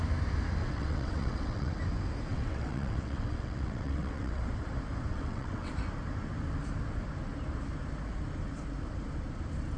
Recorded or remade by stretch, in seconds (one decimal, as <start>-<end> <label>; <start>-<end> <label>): 0.0-0.6 recorded; 0.6-1.8 remade; 1.8-2.3 recorded; 2.3-4.4 remade; 4.4-5.1 recorded; 5.1-5.7 remade; 5.7-9.8 recorded